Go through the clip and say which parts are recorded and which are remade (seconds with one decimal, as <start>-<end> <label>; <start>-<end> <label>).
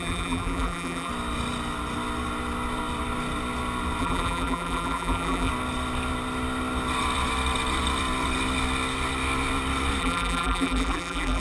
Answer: 0.0-1.1 remade; 1.1-4.0 recorded; 4.0-5.5 remade; 5.5-10.0 recorded; 10.0-11.4 remade